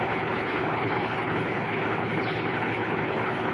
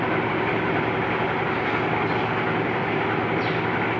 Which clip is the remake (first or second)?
first